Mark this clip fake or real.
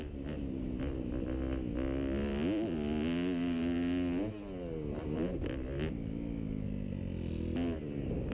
real